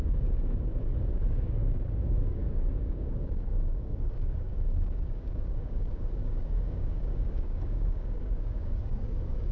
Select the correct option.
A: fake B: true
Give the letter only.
A